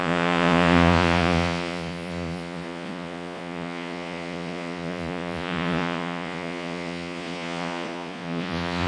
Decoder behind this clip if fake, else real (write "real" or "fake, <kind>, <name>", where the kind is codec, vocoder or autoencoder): fake, vocoder, Vocos